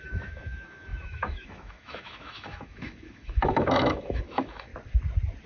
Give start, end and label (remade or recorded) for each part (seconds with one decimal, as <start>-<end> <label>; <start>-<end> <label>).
0.0-4.7 remade; 4.7-5.5 recorded

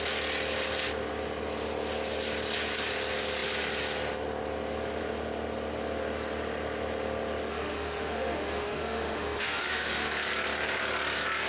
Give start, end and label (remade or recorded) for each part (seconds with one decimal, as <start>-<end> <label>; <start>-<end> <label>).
0.0-7.5 recorded; 7.5-10.1 remade; 10.1-11.5 recorded